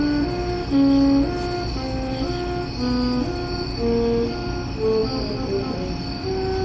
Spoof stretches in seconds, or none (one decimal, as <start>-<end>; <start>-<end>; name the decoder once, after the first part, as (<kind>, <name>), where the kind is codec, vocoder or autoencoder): none